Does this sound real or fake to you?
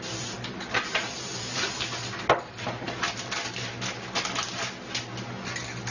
real